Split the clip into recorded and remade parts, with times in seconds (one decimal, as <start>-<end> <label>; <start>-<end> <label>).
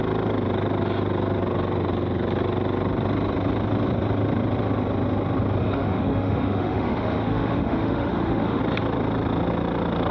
0.0-5.6 recorded; 5.6-8.6 remade; 8.6-10.1 recorded